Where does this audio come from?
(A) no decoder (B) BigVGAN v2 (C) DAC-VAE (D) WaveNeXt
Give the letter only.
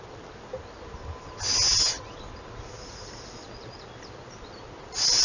A